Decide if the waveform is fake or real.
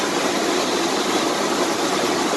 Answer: real